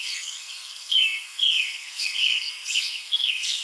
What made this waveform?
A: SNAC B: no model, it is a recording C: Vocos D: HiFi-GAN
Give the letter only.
A